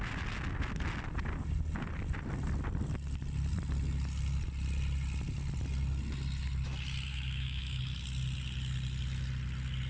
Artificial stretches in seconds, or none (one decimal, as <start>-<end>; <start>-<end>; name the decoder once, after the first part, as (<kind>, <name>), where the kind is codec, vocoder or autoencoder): 7.1-7.8 (autoencoder, DAC-VAE)